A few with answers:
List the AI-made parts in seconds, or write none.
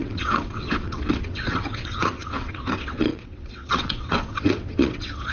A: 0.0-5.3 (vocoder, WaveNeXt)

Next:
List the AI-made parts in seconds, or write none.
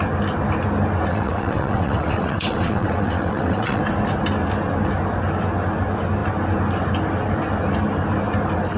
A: 1.1-3.8 (vocoder, WaveNeXt)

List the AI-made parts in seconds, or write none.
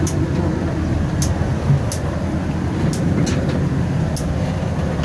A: none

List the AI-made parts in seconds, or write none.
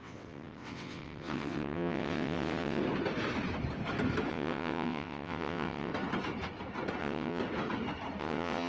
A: 0.0-2.8 (vocoder, WaveNeXt); 4.3-5.9; 7.0-7.4; 8.2-8.7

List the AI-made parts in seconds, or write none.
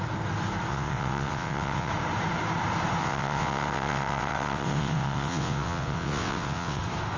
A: 0.7-1.9 (vocoder, WaveNeXt); 3.0-6.8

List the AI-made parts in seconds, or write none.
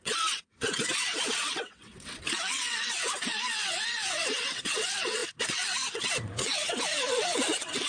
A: 0.0-7.9 (vocoder, WaveNeXt)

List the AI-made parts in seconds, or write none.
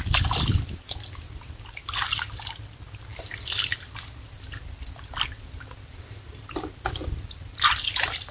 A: none